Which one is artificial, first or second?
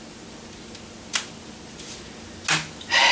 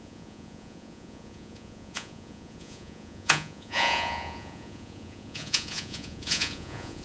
second